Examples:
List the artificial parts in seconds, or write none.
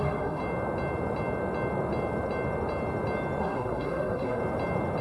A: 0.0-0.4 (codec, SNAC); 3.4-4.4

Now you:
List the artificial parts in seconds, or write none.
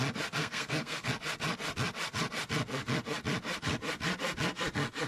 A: 0.4-1.1 (codec, SNAC)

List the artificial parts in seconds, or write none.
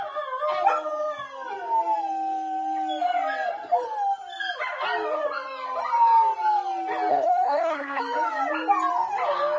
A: 7.1-8.0 (codec, SNAC)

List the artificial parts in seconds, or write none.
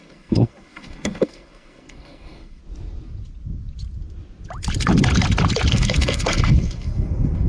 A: 0.0-2.6 (codec, SNAC); 5.7-7.5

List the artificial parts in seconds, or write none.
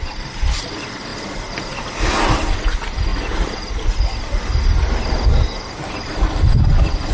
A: none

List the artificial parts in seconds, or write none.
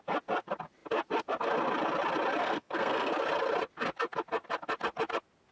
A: 2.4-3.1 (codec, SNAC)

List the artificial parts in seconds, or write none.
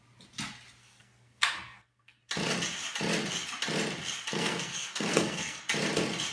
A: 0.8-2.2 (codec, SNAC); 4.3-5.6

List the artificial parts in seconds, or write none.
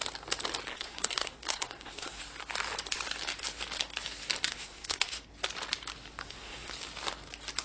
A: 0.7-2.2 (codec, SNAC); 4.5-5.3; 6.2-6.7